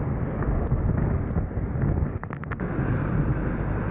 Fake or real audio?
real